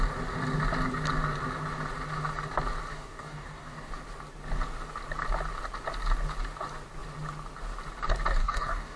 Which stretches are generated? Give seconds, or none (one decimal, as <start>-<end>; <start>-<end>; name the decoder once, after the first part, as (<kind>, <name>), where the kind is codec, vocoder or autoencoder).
2.9-3.9 (codec, DAC); 8.4-9.0